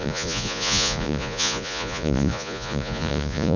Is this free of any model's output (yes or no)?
no